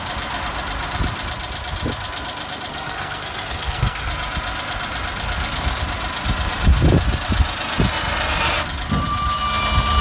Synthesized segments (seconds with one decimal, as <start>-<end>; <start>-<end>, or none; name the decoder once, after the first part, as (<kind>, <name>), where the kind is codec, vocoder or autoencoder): 2.7-4.1 (codec, SNAC)